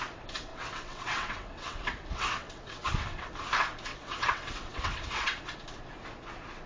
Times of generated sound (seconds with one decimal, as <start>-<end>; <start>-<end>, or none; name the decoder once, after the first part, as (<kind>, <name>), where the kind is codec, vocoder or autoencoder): 0.5-3.3 (vocoder, WaveNeXt); 3.9-5.4